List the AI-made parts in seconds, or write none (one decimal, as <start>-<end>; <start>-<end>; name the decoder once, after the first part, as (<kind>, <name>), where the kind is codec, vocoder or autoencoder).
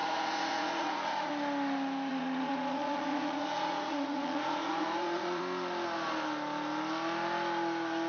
0.0-1.3 (vocoder, Vocos); 2.1-5.4